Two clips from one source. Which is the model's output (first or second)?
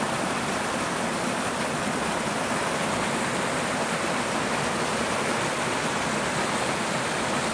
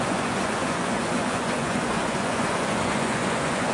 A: second